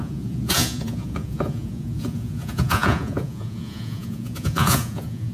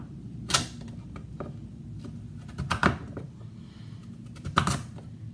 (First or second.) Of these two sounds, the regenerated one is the first